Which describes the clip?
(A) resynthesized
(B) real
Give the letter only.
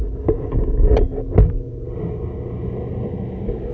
B